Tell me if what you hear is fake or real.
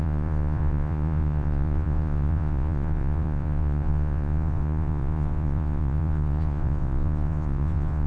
fake